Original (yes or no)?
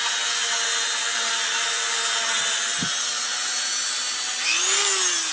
yes